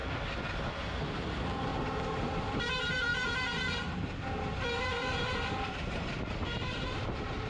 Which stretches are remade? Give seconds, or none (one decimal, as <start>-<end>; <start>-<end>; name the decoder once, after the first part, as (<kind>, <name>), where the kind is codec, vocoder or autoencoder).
0.8-7.5 (vocoder, BigVGAN v2)